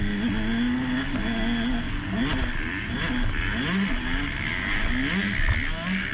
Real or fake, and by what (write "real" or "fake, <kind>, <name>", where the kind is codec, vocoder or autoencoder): real